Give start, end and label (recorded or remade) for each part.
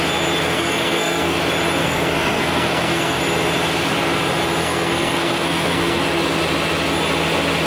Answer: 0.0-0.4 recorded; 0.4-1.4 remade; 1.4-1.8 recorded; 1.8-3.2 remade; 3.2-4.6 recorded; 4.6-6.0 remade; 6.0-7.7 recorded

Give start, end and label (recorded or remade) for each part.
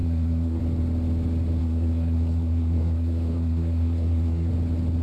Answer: 0.0-0.6 remade; 0.6-1.6 recorded; 1.6-4.5 remade; 4.5-5.0 recorded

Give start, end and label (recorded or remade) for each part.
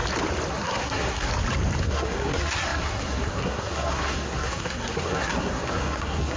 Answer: 0.0-0.5 recorded; 0.5-1.3 remade; 1.3-1.8 recorded; 1.8-6.4 remade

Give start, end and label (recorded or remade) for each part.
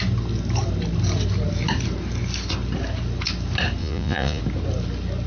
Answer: 0.0-3.8 recorded; 3.8-4.4 remade; 4.4-5.3 recorded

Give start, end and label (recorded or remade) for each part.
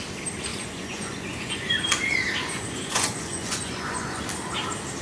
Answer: 0.0-0.5 recorded; 0.5-1.8 remade; 1.8-2.4 recorded; 2.4-4.2 remade; 4.2-5.0 recorded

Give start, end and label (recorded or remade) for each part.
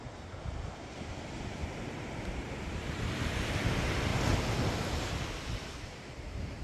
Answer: 0.0-6.6 recorded